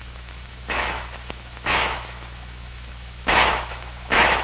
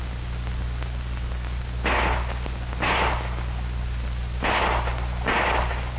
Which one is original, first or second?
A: second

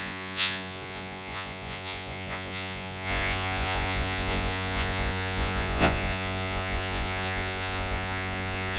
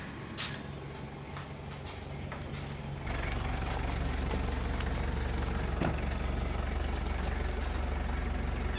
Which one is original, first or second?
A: second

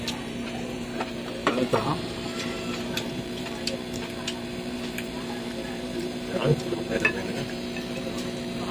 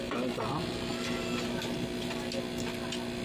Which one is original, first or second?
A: second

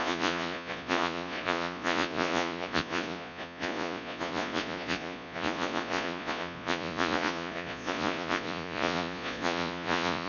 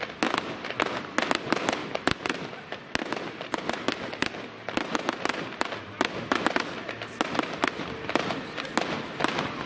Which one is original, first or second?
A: second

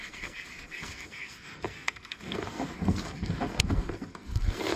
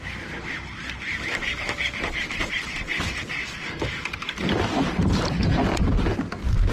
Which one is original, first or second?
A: second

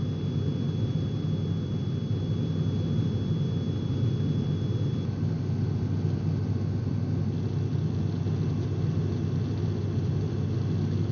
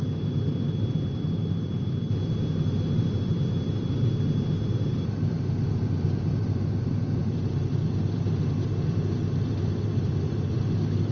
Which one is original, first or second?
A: first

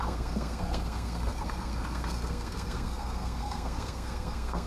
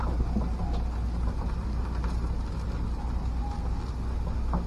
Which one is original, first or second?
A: second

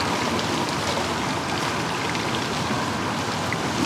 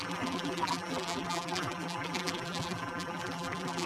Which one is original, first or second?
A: first